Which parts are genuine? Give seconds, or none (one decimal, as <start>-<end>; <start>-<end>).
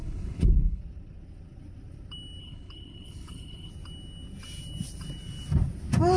0.8-2.4; 3.7-6.2